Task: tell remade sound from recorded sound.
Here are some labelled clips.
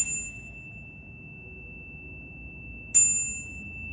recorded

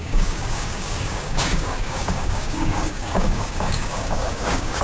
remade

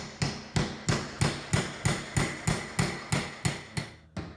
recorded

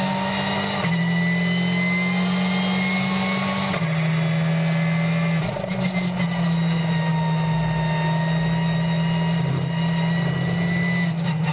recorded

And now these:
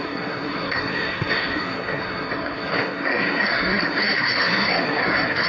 remade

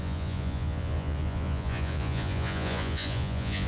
remade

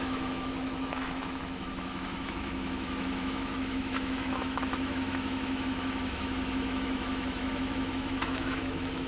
remade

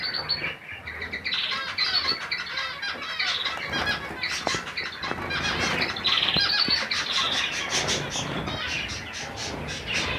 recorded